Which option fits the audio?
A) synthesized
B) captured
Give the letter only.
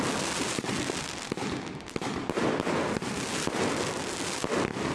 B